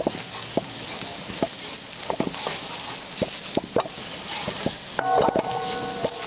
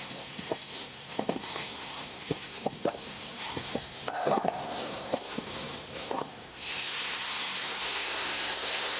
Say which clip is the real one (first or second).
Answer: first